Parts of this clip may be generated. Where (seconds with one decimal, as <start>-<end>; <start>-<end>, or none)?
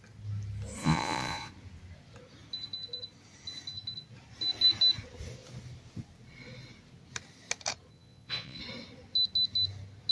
0.8-1.5; 7.9-8.6